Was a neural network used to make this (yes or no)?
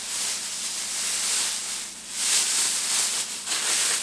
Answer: no